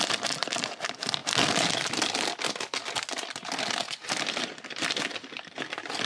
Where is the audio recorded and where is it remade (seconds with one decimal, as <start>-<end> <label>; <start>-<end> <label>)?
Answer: 0.0-6.1 recorded